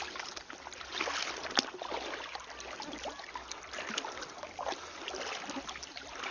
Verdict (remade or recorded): recorded